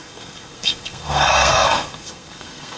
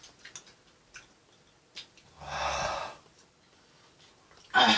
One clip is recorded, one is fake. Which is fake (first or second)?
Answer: first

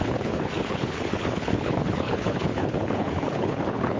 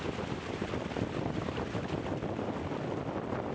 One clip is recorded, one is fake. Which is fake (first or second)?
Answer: first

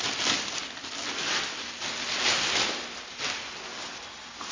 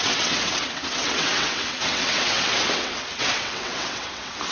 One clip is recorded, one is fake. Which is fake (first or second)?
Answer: second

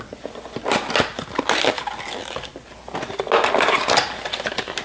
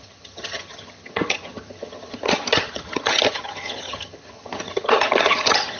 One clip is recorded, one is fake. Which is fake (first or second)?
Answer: second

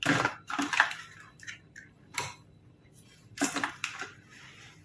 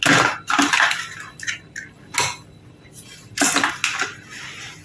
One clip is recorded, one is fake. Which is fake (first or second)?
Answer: first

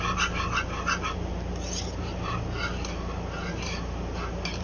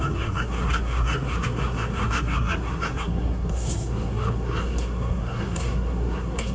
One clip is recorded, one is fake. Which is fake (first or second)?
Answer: second